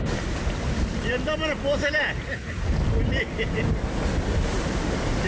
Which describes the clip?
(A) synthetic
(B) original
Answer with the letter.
B